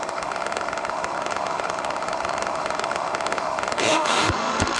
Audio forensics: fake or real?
fake